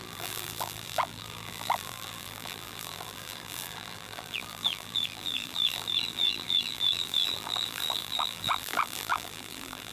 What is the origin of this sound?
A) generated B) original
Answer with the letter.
A